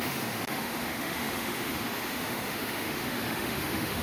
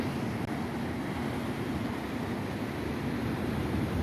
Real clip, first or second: second